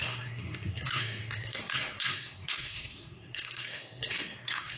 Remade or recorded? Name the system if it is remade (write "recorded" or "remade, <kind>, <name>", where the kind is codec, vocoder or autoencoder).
remade, codec, SNAC